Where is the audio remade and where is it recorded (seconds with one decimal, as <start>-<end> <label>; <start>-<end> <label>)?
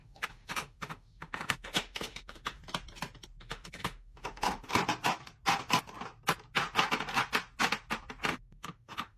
0.0-2.6 remade; 2.6-3.4 recorded; 3.4-4.8 remade; 4.8-8.3 recorded; 8.3-9.2 remade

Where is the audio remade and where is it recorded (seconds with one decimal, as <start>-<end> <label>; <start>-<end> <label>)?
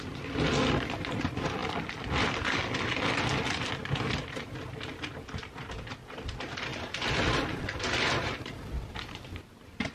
0.0-9.9 recorded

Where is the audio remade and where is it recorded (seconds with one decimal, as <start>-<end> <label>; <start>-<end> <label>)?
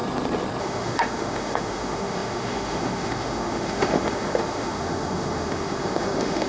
0.0-0.6 recorded; 0.6-6.5 remade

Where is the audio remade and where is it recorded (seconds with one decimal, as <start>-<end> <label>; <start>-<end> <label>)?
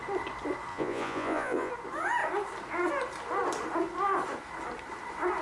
0.0-0.7 recorded; 0.7-1.7 remade; 1.7-5.4 recorded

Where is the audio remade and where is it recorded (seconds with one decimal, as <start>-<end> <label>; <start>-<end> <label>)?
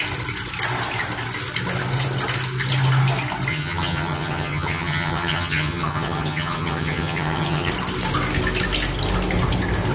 0.0-3.5 recorded; 3.5-7.7 remade; 7.7-9.9 recorded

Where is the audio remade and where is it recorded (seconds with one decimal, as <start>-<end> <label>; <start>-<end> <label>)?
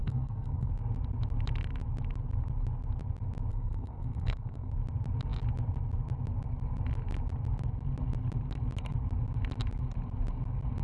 0.0-0.7 remade; 0.7-3.5 recorded; 3.5-4.7 remade; 4.7-10.8 recorded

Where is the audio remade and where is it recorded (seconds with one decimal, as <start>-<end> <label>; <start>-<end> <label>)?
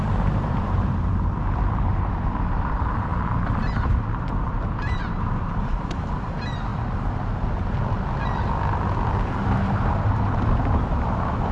0.0-3.1 remade; 3.1-3.7 recorded; 3.7-6.7 remade; 6.7-9.4 recorded; 9.4-11.5 remade